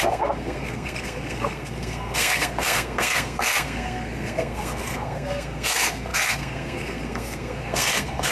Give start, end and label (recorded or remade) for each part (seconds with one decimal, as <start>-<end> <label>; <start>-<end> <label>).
0.0-8.3 remade